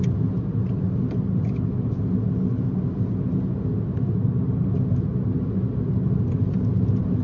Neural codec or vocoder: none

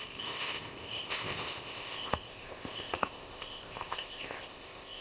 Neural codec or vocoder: codec, ZipCodec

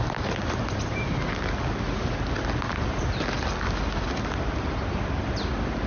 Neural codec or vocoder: none